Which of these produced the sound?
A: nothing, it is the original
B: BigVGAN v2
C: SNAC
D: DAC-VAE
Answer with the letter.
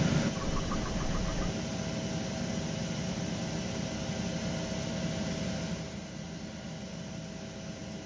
A